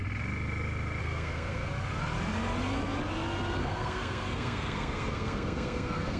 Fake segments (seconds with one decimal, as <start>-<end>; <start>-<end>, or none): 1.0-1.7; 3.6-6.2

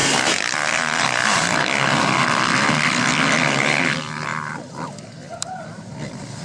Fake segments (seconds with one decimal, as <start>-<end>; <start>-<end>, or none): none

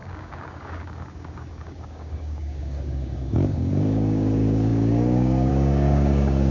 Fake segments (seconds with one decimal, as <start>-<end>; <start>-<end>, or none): 0.0-6.5

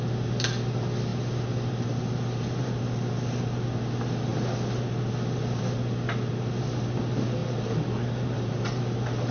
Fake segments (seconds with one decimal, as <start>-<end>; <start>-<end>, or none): 1.1-2.7; 7.4-8.8

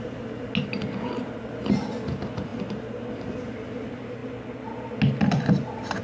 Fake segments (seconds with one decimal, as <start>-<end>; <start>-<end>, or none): none